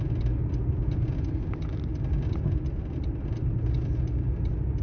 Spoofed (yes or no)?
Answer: no